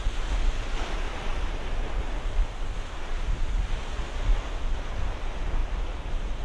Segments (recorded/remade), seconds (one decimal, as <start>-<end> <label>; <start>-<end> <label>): 0.0-6.4 recorded